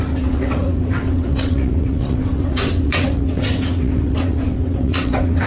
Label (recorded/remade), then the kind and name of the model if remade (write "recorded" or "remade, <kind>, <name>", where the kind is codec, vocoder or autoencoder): remade, vocoder, WaveNeXt